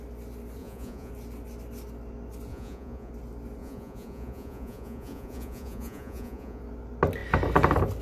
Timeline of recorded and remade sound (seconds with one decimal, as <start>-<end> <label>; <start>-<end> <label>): 0.0-0.6 recorded; 0.6-1.1 remade; 1.1-2.5 recorded; 2.5-3.1 remade; 3.1-3.6 recorded; 3.6-6.6 remade; 6.6-8.0 recorded